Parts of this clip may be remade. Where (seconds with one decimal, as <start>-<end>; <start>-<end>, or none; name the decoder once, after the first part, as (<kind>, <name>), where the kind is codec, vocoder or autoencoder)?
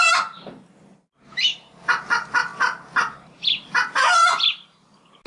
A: none